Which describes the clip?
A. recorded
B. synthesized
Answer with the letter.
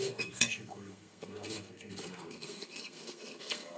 B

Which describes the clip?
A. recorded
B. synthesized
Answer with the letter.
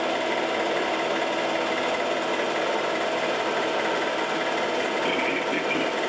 A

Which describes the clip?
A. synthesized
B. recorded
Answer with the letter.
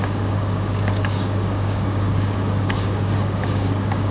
A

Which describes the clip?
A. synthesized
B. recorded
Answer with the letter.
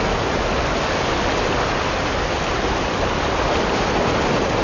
B